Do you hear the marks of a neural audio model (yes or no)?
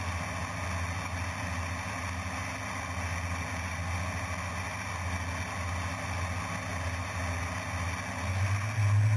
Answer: no